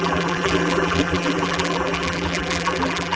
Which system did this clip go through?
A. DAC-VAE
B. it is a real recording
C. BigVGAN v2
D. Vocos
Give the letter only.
C